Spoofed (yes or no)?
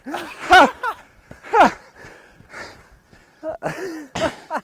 no